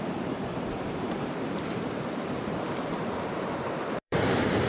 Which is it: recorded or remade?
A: remade